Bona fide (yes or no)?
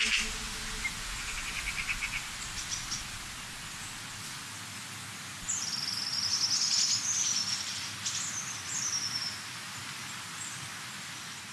yes